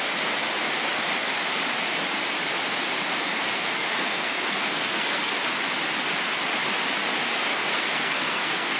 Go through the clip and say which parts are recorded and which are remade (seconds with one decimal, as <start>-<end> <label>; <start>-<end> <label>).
0.0-3.3 recorded; 3.3-5.3 remade; 5.3-7.5 recorded; 7.5-8.8 remade